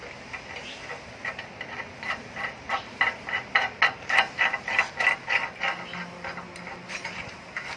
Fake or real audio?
real